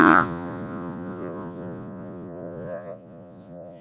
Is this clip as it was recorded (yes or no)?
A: no